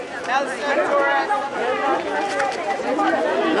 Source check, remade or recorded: recorded